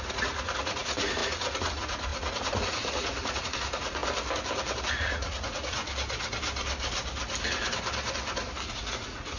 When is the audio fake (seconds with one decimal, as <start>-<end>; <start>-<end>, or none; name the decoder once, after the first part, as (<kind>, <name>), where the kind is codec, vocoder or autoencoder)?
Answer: 0.0-4.0 (vocoder, Vocos); 4.8-5.8; 8.7-9.4